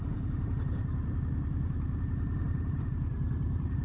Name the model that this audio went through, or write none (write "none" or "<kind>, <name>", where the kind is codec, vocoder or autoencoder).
vocoder, BigVGAN v2